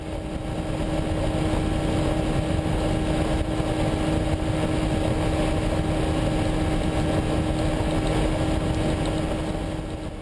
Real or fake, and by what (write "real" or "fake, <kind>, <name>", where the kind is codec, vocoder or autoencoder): real